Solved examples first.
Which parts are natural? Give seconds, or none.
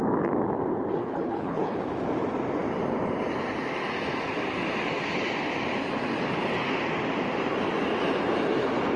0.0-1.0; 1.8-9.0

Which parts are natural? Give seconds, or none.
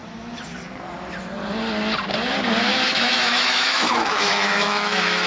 0.0-2.7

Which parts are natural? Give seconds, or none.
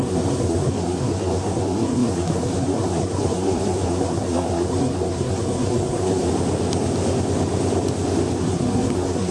6.3-8.4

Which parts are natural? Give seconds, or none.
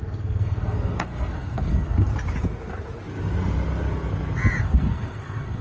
2.1-4.6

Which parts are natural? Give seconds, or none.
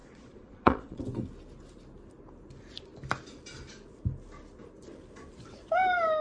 1.0-6.2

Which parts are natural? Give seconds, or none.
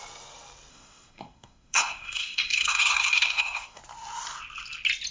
0.0-0.7; 3.8-5.1